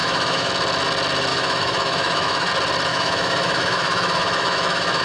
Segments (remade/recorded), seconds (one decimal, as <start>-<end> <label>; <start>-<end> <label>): 0.0-0.5 remade; 0.5-1.3 recorded; 1.3-2.5 remade; 2.5-2.9 recorded; 2.9-5.0 remade